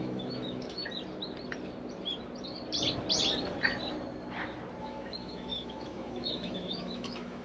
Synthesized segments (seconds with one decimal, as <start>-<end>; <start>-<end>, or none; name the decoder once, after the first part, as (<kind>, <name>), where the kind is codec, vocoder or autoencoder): 0.0-0.8 (autoencoder, DAC-VAE); 4.8-7.4

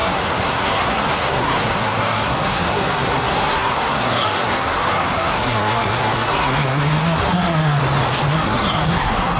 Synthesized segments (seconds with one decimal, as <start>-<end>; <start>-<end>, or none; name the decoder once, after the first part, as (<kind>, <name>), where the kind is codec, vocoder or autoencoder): 0.0-7.8 (codec, SNAC); 8.3-9.4